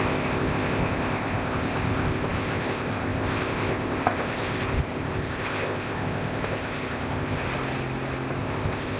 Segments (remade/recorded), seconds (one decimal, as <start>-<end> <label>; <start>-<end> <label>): 0.0-7.4 remade; 7.4-8.4 recorded; 8.4-9.0 remade